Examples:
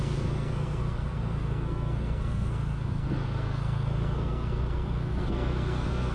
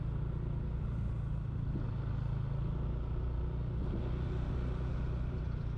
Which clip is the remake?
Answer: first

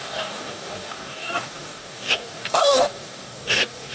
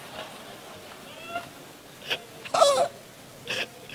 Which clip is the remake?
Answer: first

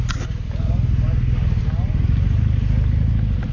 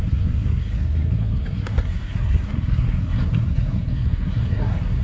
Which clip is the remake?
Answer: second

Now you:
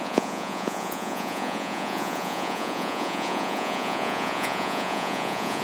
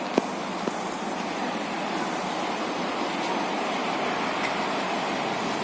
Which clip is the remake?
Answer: first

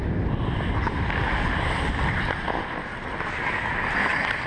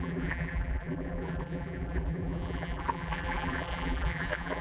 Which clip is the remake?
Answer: second